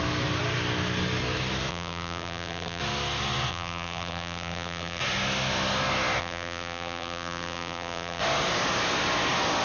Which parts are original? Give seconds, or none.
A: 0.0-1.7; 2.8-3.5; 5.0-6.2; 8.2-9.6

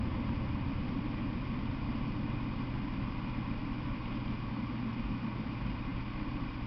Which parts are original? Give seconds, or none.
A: 0.0-5.9

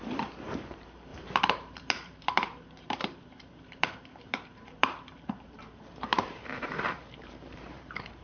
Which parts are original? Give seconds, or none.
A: none

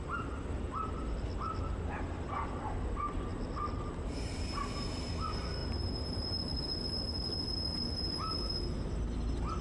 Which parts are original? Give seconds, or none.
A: 0.0-5.6; 6.4-9.6

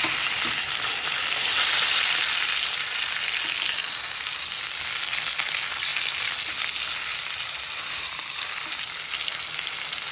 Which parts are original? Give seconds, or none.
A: 0.0-10.1

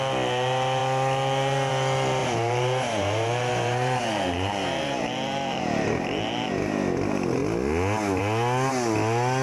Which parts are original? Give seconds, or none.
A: 0.0-2.2; 6.5-9.4

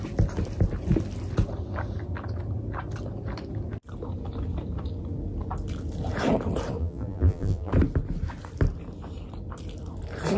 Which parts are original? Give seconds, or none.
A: 0.0-6.8; 7.7-10.4